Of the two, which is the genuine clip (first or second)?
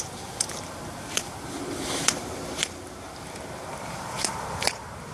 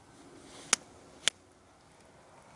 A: second